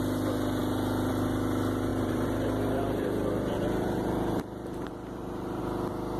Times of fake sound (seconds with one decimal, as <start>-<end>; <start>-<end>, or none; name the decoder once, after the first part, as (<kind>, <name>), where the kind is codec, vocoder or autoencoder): 1.9-5.6 (vocoder, BigVGAN v2)